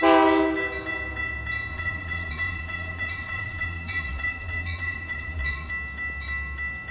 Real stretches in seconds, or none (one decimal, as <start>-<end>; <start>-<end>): 0.0-1.7; 5.7-6.9